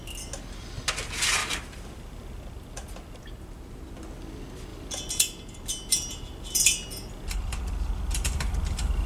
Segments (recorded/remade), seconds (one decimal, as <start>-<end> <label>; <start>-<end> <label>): 0.0-1.4 recorded; 1.4-4.0 remade; 4.0-4.7 recorded; 4.7-9.1 remade